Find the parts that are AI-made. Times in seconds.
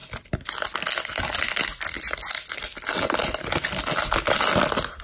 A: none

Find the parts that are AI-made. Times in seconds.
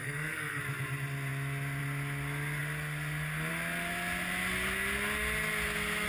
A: 0.0-0.6 (codec, SNAC)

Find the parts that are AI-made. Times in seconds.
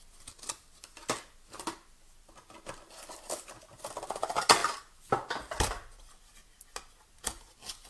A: none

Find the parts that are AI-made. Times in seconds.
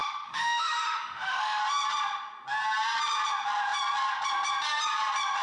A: 0.0-1.6 (autoencoder, DAC-VAE)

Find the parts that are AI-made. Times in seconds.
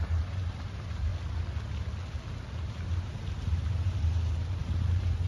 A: 0.0-1.1 (vocoder, BigVGAN v2); 2.7-5.3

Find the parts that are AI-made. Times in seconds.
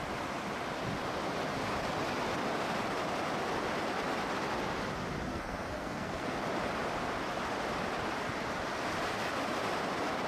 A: 5.3-6.4 (codec, SNAC)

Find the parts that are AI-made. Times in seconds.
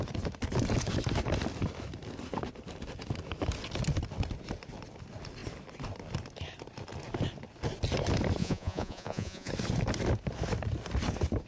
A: 8.4-9.5 (vocoder, Vocos)